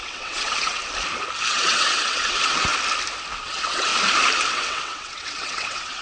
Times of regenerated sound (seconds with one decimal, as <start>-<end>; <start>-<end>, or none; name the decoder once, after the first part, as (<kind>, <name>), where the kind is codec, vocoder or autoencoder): 0.0-0.8 (vocoder, WaveNeXt); 1.5-2.7; 3.4-3.9; 4.5-6.0